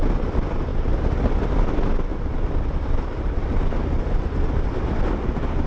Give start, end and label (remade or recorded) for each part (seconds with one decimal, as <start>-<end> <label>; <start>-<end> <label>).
0.0-0.7 recorded; 0.7-1.6 remade; 1.6-2.1 recorded; 2.1-3.5 remade; 3.5-5.7 recorded